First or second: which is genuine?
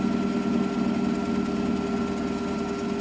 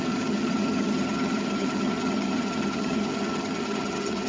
first